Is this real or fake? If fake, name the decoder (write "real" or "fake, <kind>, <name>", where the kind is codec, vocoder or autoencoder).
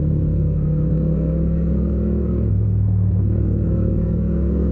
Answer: fake, codec, SNAC